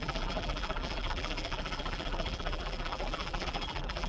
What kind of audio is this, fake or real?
fake